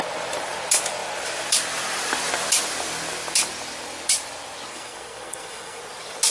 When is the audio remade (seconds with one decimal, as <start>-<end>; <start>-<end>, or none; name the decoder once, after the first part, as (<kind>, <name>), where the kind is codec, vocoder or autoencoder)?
4.7-5.8 (codec, SNAC)